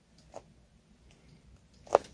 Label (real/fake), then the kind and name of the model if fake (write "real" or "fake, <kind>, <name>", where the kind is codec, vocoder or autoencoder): real